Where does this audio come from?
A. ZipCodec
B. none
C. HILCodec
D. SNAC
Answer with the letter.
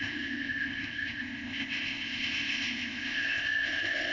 A